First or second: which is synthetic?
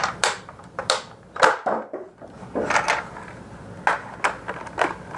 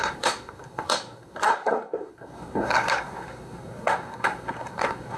second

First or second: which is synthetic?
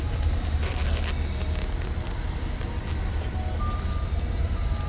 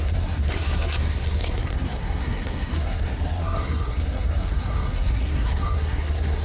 second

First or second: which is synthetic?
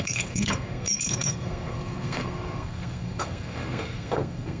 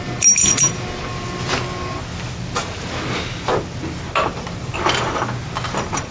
first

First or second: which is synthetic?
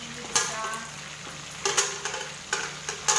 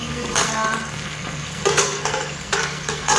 second